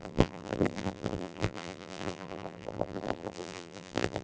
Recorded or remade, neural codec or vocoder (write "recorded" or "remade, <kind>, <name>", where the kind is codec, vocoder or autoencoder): remade, vocoder, BigVGAN v2